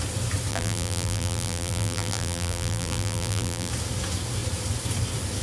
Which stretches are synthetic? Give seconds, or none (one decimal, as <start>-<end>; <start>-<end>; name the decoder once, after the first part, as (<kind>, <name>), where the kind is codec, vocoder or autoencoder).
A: 0.5-3.7 (vocoder, BigVGAN v2)